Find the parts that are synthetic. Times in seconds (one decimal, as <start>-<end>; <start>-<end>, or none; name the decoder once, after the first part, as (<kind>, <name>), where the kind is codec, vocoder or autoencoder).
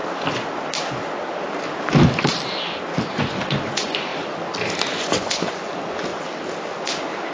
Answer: 3.1-4.1 (vocoder, Vocos); 4.9-6.1